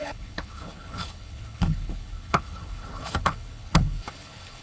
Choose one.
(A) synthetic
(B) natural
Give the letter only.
A